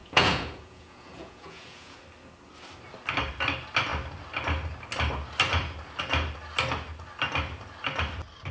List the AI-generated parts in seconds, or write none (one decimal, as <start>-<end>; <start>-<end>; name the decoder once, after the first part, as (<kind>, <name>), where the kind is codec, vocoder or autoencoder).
0.0-2.0 (vocoder, Vocos)